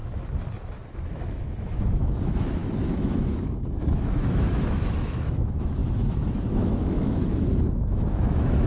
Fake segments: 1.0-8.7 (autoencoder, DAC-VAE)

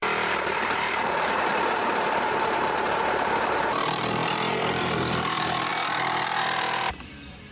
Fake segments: 0.0-7.5 (vocoder, BigVGAN v2)

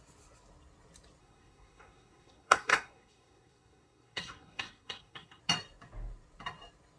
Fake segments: 1.2-5.4 (codec, SNAC)

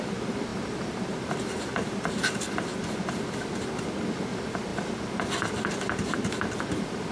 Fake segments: none

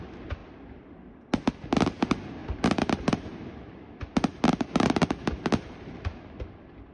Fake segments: 0.4-1.5 (vocoder, BigVGAN v2); 2.4-6.0

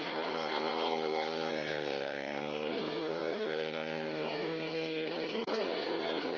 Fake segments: 0.0-6.4 (codec, SNAC)

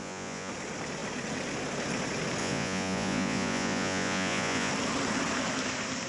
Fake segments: 0.0-0.5 (vocoder, Vocos); 2.4-4.7

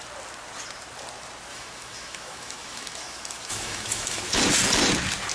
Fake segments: 1.5-4.4 (autoencoder, DAC-VAE)